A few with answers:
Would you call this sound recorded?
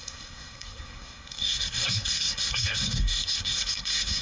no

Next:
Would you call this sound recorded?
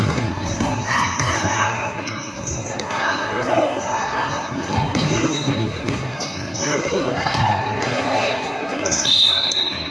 no